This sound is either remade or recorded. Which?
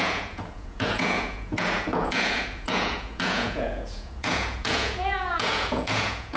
remade